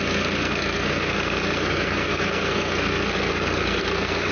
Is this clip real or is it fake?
fake